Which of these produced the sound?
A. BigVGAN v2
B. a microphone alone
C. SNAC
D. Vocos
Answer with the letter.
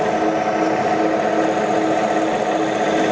B